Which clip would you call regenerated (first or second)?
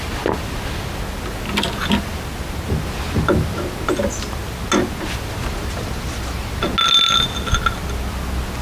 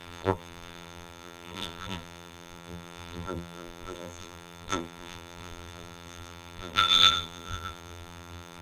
second